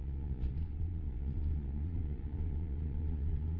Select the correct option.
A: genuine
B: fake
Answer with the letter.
B